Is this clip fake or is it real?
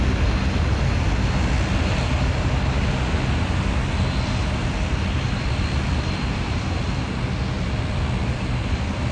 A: real